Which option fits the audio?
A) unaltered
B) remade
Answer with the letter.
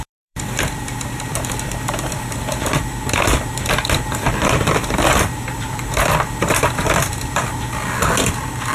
B